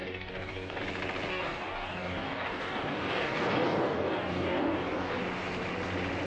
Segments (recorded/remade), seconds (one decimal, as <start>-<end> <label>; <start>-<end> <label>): 0.0-0.8 remade; 0.8-1.3 recorded; 1.3-5.1 remade; 5.1-6.3 recorded